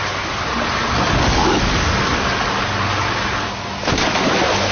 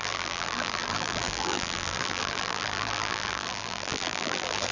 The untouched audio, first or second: first